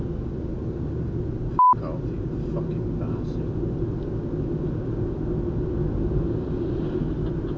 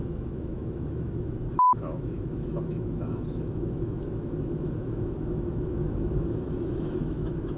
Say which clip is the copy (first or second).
second